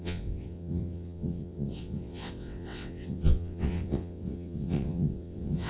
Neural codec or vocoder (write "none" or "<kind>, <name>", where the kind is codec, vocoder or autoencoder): vocoder, WaveNeXt